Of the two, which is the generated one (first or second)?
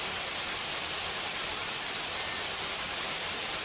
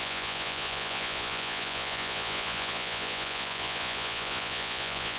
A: second